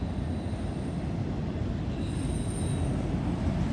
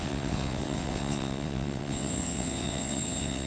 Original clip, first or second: first